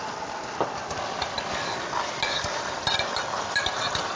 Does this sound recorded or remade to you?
recorded